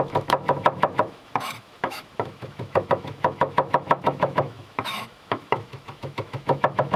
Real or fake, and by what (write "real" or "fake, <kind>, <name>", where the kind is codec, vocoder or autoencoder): fake, autoencoder, DAC-VAE